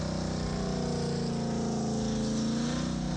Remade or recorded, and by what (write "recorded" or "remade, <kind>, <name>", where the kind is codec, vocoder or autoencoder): recorded